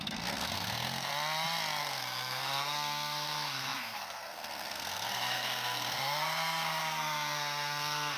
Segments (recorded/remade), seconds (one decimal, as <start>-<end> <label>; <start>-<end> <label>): 0.0-1.1 remade; 1.1-1.8 recorded; 1.8-8.2 remade